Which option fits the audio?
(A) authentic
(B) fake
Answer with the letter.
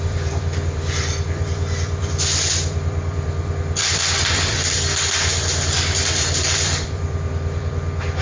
B